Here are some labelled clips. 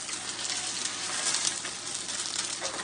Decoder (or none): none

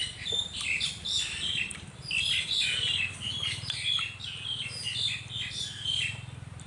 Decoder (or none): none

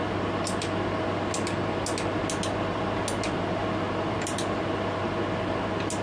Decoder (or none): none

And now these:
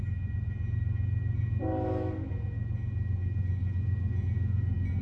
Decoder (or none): none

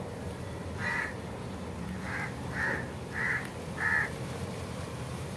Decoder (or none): vocoder, BigVGAN v2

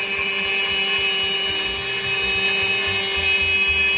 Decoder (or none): none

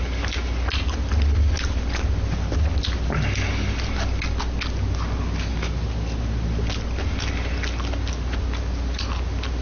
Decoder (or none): none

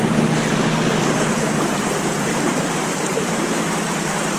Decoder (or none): vocoder, BigVGAN v2